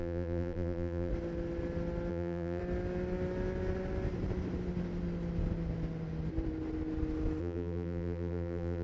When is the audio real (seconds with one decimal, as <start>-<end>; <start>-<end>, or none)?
1.1-2.1; 2.6-7.4